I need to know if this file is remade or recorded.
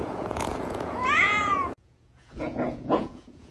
remade